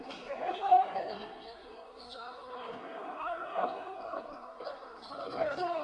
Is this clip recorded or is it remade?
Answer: remade